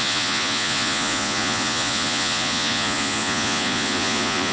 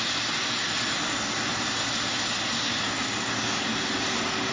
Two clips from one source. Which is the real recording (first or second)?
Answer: second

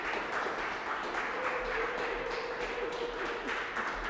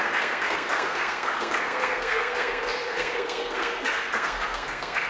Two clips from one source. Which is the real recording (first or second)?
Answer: first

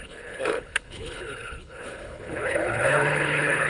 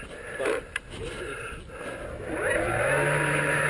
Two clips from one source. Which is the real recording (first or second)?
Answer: second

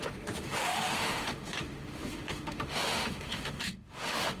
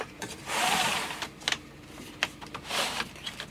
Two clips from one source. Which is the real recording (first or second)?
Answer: second